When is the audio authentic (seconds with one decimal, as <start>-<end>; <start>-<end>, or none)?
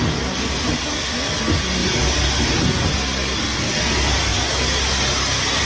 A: 0.0-5.6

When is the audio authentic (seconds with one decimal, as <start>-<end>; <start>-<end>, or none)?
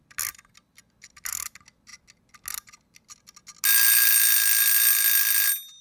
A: 0.0-5.8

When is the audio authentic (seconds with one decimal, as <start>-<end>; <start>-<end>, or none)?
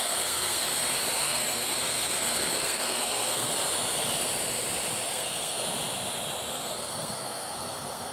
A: 0.6-1.2; 3.5-5.1; 5.6-6.5